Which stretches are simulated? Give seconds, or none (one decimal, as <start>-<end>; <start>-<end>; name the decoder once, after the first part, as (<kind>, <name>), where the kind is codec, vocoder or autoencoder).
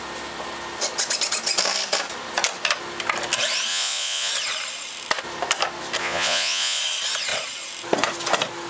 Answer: 3.7-4.3 (vocoder, Vocos); 6.0-6.8